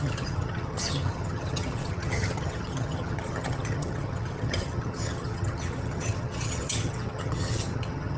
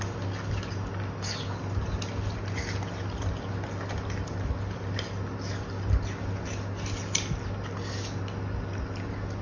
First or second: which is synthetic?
first